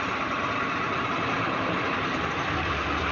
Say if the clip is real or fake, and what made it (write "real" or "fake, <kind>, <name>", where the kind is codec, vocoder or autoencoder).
fake, vocoder, BigVGAN v2